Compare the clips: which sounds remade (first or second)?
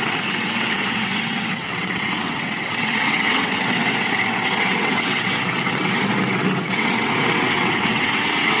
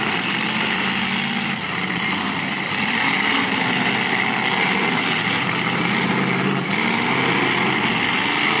first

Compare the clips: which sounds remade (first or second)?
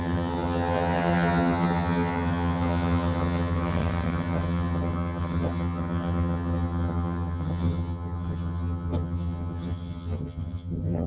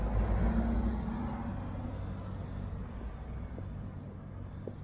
first